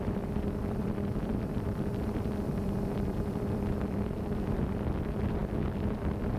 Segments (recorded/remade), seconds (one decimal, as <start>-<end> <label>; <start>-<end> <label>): 0.0-5.4 remade; 5.4-5.9 recorded; 5.9-6.4 remade